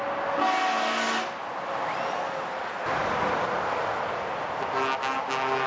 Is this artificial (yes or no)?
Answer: no